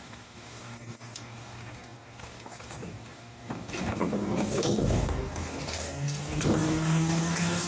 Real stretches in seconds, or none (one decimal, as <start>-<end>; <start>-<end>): none